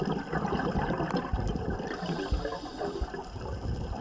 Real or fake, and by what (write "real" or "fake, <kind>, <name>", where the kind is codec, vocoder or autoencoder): fake, vocoder, BigVGAN v2